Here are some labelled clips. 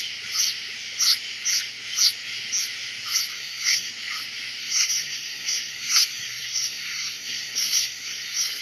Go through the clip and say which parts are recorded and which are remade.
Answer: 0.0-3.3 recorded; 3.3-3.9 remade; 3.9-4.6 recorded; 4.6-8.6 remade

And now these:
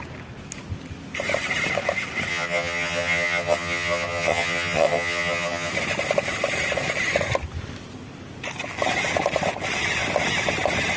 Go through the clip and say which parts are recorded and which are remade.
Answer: 0.0-2.3 recorded; 2.3-5.7 remade; 5.7-11.0 recorded

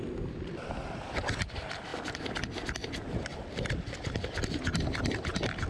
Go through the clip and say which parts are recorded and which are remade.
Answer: 0.0-5.7 recorded

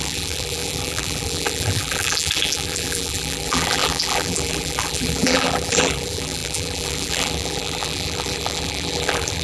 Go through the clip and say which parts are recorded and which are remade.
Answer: 0.0-9.4 remade